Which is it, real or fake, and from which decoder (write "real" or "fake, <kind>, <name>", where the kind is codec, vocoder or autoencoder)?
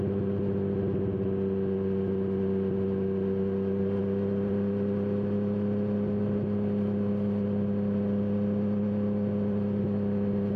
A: real